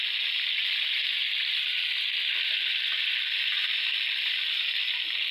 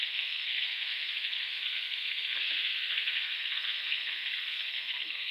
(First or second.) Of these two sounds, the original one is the first